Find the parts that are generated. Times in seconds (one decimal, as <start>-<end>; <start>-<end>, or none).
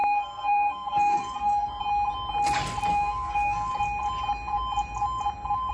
0.0-1.8; 2.9-3.7